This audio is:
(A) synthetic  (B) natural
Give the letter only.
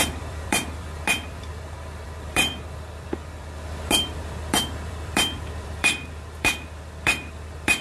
A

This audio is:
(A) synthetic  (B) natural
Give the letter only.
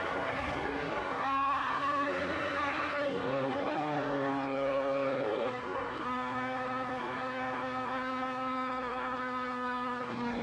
A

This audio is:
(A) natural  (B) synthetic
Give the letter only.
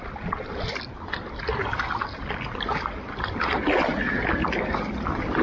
A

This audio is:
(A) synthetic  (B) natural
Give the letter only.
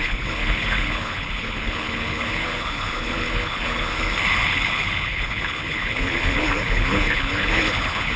A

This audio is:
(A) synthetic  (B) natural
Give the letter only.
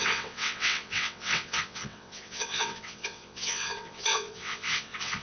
A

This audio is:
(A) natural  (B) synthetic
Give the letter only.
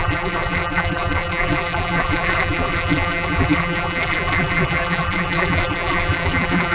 B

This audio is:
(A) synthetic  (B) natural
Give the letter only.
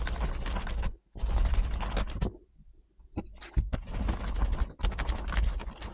B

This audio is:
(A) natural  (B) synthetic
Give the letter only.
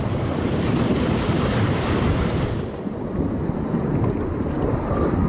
A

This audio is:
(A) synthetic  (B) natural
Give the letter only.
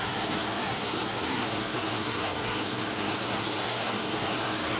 A